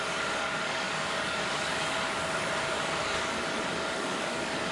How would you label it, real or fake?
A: fake